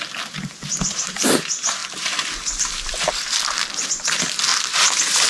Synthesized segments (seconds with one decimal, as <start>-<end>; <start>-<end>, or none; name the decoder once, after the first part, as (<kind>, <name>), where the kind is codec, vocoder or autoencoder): none